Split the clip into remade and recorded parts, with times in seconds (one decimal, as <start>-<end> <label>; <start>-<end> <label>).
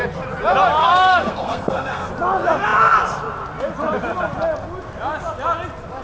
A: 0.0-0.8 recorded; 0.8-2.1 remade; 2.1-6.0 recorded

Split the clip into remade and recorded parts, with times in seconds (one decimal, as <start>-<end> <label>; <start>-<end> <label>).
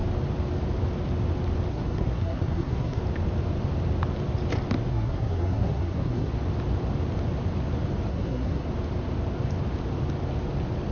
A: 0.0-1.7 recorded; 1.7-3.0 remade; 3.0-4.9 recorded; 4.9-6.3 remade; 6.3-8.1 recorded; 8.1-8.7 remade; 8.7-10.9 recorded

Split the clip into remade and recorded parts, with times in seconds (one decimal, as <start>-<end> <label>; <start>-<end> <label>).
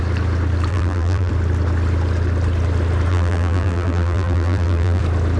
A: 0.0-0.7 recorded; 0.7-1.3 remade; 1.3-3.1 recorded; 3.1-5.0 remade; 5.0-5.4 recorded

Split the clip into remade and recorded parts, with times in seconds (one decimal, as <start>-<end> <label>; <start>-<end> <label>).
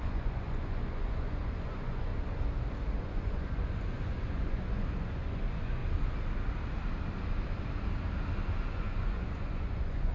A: 0.0-2.1 remade; 2.1-3.0 recorded; 3.0-5.8 remade; 5.8-8.7 recorded; 8.7-10.1 remade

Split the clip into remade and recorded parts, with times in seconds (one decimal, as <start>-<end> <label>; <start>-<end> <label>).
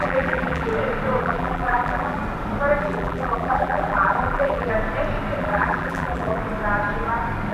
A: 0.0-0.7 remade; 0.7-1.2 recorded; 1.2-2.2 remade; 2.2-2.8 recorded; 2.8-4.7 remade; 4.7-5.4 recorded; 5.4-6.4 remade; 6.4-7.5 recorded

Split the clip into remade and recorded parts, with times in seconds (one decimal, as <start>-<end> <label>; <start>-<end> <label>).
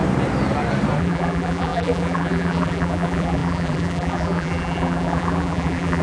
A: 0.0-1.0 recorded; 1.0-6.0 remade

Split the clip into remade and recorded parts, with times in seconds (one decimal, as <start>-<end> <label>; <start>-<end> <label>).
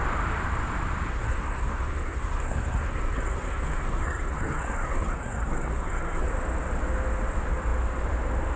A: 0.0-1.1 recorded; 1.1-6.3 remade; 6.3-8.6 recorded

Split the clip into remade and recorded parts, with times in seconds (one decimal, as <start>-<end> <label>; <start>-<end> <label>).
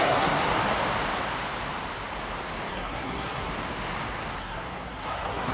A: 0.0-0.5 remade; 0.5-2.7 recorded; 2.7-3.5 remade; 3.5-4.4 recorded; 4.4-5.5 remade